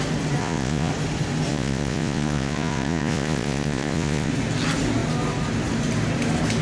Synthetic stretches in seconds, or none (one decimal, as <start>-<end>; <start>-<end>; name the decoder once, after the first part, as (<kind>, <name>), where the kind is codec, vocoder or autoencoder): 0.4-0.9 (vocoder, Vocos); 1.5-4.3